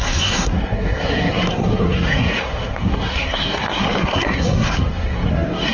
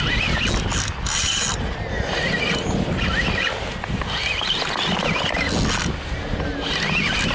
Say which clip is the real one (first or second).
second